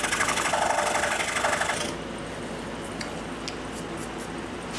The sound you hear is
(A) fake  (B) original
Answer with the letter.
B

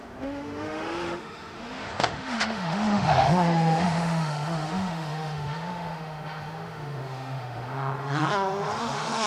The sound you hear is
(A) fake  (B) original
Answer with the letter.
A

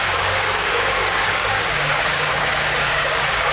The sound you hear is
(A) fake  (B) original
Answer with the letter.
A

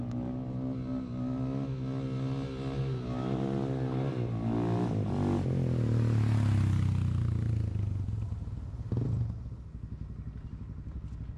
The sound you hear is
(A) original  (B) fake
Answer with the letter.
A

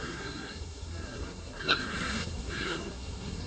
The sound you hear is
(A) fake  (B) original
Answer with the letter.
A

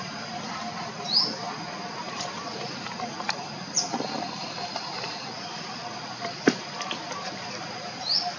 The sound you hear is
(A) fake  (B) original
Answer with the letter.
A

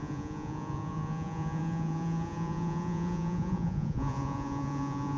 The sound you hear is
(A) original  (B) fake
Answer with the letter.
B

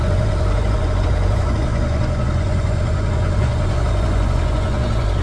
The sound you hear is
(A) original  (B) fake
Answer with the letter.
B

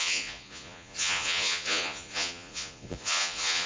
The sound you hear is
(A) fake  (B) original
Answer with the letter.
A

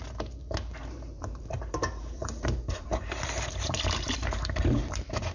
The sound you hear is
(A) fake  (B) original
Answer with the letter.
A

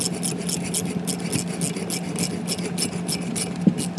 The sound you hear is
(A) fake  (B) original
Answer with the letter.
B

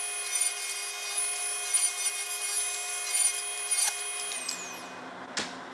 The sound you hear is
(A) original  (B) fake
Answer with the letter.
A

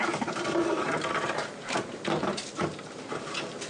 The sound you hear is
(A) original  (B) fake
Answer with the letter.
B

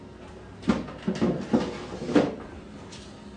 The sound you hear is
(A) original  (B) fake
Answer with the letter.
A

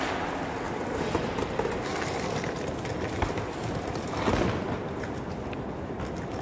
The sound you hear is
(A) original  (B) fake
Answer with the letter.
A